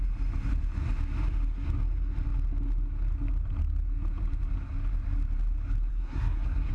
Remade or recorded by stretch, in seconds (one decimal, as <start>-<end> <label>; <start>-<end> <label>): 0.0-5.9 recorded; 5.9-6.7 remade